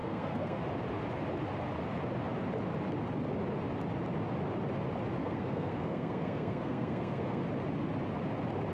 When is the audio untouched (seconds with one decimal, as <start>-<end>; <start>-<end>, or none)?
0.6-5.2; 7.4-8.7